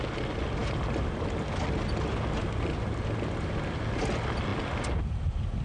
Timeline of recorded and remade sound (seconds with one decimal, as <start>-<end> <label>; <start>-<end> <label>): 0.0-5.6 recorded